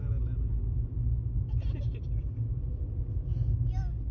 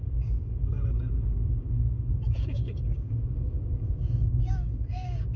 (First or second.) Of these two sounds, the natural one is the first